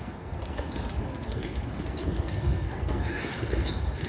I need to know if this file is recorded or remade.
remade